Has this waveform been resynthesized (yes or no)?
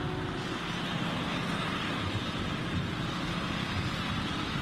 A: no